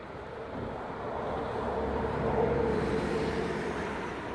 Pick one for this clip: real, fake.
fake